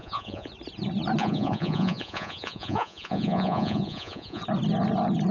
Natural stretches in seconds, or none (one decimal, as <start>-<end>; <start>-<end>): 0.5-1.2; 4.4-5.3